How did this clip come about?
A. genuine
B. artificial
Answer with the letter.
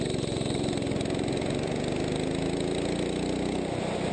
A